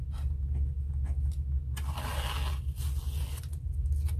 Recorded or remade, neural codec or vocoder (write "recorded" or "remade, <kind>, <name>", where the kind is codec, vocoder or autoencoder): recorded